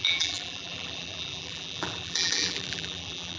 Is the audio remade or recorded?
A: remade